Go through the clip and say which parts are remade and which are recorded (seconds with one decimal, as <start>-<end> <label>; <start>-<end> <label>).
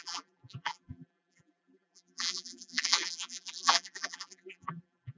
0.0-5.2 remade